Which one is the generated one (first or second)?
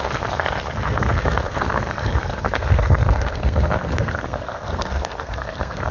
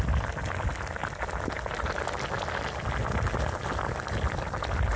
first